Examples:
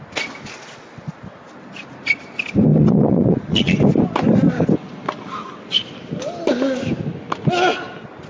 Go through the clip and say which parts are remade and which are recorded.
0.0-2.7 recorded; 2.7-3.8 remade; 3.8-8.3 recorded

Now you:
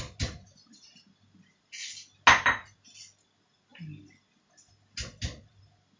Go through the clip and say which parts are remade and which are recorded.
0.0-6.0 recorded

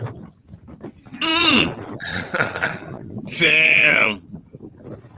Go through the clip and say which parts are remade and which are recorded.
0.0-1.3 recorded; 1.3-4.4 remade; 4.4-5.2 recorded